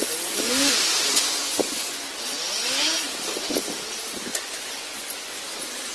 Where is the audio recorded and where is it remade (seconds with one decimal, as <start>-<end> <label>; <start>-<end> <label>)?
0.0-1.1 recorded; 1.1-2.1 remade; 2.1-4.3 recorded; 4.3-5.3 remade; 5.3-5.9 recorded